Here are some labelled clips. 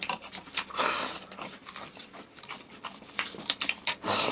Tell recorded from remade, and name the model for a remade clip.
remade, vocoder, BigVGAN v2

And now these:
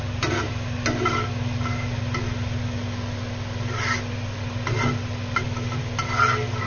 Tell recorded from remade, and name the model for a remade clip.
recorded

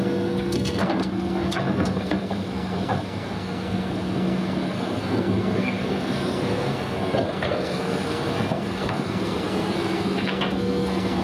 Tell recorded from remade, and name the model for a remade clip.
remade, codec, SNAC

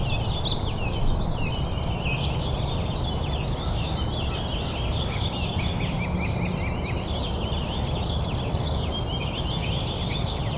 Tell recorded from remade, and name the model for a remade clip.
recorded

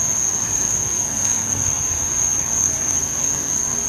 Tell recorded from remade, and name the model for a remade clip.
remade, codec, SNAC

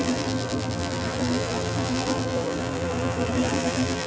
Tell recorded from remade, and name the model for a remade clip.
remade, vocoder, BigVGAN v2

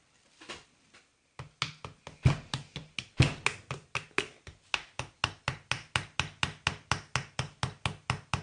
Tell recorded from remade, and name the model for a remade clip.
recorded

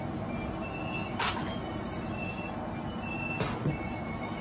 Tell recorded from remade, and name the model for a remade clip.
recorded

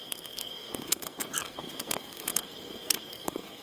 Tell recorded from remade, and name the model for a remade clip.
remade, codec, SNAC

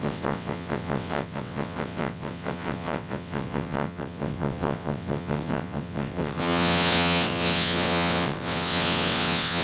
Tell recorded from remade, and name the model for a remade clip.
remade, vocoder, WaveNeXt